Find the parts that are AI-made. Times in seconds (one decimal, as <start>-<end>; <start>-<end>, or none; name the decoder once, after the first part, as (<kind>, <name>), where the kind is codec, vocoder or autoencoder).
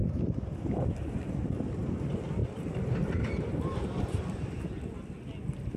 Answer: none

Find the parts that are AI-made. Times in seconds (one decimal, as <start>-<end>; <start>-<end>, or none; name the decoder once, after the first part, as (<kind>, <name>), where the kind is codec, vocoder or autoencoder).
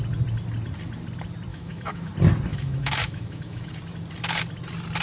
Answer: 1.5-2.1 (autoencoder, DAC-VAE); 2.5-3.7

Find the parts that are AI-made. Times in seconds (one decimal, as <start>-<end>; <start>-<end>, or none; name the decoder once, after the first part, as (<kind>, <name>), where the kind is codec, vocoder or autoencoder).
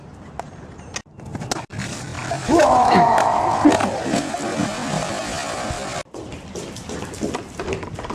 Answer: 2.4-3.4 (autoencoder, DAC-VAE)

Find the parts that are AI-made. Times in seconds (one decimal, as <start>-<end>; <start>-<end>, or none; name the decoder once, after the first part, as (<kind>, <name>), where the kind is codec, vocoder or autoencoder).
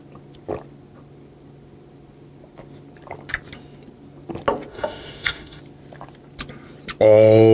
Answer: 4.7-5.6 (autoencoder, DAC-VAE)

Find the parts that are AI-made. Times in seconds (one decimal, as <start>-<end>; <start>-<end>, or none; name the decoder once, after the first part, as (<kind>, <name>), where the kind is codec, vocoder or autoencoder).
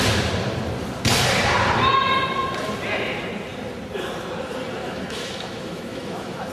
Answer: 4.8-6.5 (autoencoder, DAC-VAE)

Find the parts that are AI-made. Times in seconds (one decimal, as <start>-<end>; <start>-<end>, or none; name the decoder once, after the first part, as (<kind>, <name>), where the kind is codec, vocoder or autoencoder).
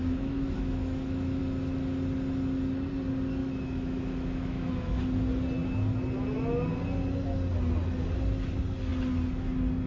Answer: 0.0-1.4 (autoencoder, DAC-VAE); 3.4-5.0